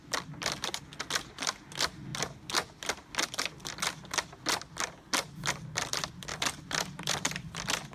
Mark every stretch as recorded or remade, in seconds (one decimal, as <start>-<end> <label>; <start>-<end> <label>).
0.0-7.9 recorded